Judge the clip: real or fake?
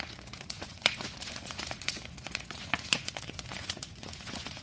fake